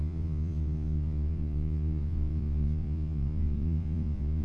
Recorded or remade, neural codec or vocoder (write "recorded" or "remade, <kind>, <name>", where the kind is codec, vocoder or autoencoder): remade, vocoder, Vocos